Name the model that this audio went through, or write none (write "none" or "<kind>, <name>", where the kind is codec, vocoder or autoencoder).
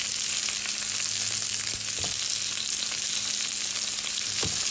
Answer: none